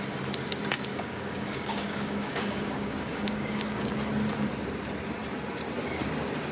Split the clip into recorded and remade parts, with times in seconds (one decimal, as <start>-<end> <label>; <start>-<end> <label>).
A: 0.0-0.9 recorded; 0.9-3.9 remade; 3.9-6.5 recorded